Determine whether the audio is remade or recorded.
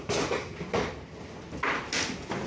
recorded